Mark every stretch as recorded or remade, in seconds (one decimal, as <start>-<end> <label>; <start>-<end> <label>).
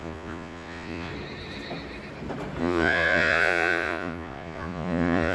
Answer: 0.0-1.1 remade; 1.1-2.6 recorded; 2.6-5.3 remade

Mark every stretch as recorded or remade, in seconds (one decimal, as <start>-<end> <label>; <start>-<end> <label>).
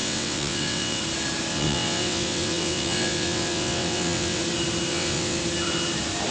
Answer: 0.0-1.0 remade; 1.0-1.5 recorded; 1.5-4.4 remade; 4.4-4.9 recorded; 4.9-5.4 remade; 5.4-6.3 recorded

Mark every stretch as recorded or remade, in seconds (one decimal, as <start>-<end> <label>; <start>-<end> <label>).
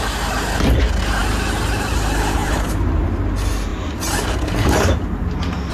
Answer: 0.0-2.4 recorded; 2.4-3.0 remade; 3.0-5.7 recorded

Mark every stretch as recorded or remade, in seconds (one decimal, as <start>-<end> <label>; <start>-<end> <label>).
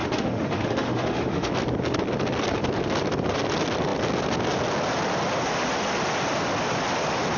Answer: 0.0-1.5 remade; 1.5-7.4 recorded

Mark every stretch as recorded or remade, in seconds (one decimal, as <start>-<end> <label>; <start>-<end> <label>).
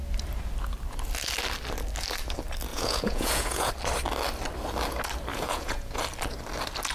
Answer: 0.0-2.7 recorded; 2.7-3.7 remade; 3.7-5.3 recorded; 5.3-6.0 remade; 6.0-6.9 recorded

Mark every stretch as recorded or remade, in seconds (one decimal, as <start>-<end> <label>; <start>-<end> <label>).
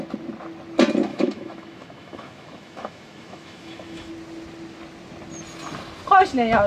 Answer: 0.0-1.1 recorded; 1.1-4.1 remade; 4.1-6.7 recorded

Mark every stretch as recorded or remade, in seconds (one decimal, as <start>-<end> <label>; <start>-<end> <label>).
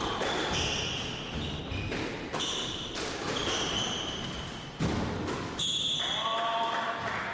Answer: 0.0-7.3 recorded